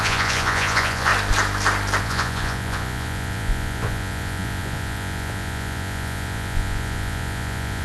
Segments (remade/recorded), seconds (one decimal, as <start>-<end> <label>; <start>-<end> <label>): 0.0-1.1 remade; 1.1-2.0 recorded; 2.0-7.8 remade